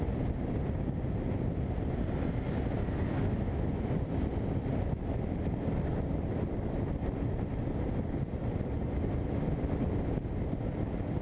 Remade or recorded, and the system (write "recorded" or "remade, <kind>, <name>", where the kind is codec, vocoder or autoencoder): recorded